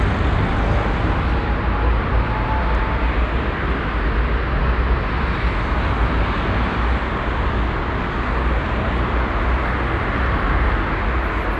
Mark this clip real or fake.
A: real